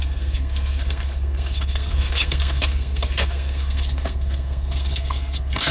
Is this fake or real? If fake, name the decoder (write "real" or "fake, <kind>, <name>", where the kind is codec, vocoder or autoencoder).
fake, codec, SNAC